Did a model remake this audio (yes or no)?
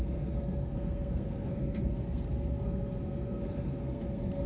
yes